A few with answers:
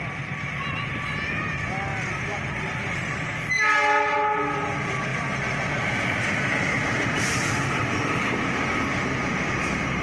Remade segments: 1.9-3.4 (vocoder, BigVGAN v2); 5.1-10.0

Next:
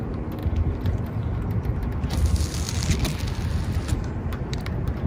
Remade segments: none